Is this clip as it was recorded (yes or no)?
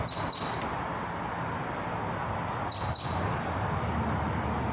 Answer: yes